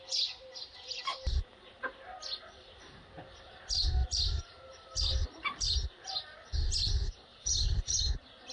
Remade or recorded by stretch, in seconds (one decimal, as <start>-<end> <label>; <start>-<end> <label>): 0.0-1.1 recorded; 1.1-3.5 remade; 3.5-4.0 recorded; 4.0-6.5 remade; 6.5-7.3 recorded; 7.3-8.1 remade; 8.1-8.5 recorded